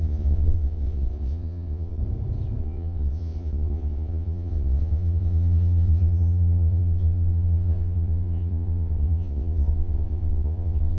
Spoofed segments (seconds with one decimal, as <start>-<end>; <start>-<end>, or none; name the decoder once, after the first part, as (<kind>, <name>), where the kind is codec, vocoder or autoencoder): 0.0-2.0 (vocoder, Vocos); 2.6-11.0